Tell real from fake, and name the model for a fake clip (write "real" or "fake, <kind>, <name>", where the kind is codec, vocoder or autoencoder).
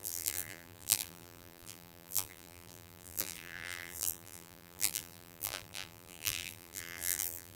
fake, vocoder, BigVGAN v2